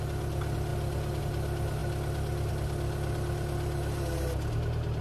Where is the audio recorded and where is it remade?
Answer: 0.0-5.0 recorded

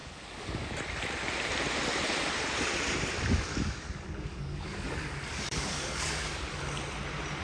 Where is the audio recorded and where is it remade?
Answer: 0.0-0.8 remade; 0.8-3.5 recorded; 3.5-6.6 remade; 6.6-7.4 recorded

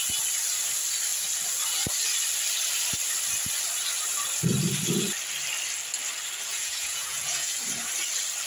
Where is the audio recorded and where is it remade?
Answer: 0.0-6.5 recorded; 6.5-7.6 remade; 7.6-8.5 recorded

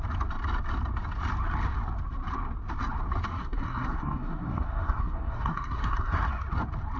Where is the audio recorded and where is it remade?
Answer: 0.0-3.3 recorded; 3.3-6.3 remade; 6.3-7.0 recorded